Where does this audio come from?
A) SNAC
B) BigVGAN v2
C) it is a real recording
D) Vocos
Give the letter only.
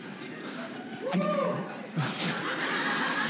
C